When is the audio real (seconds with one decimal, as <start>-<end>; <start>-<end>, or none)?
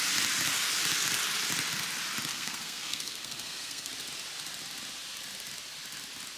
0.0-2.3; 3.9-6.4